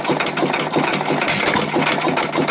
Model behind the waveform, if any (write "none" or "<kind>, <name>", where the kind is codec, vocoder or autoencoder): none